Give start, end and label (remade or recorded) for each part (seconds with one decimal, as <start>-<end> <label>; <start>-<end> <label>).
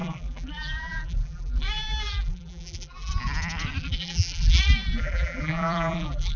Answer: 0.0-3.1 remade; 3.1-3.8 recorded; 3.8-6.4 remade